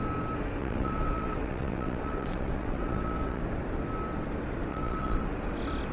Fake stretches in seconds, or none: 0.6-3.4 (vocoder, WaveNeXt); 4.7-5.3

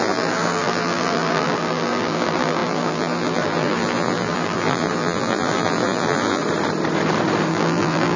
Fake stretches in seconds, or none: 0.0-6.4 (vocoder, BigVGAN v2); 7.5-8.2